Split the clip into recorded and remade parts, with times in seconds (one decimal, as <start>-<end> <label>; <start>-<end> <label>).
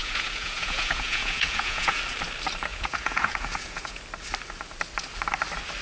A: 0.0-2.0 remade; 2.0-2.7 recorded; 2.7-4.0 remade; 4.0-5.8 recorded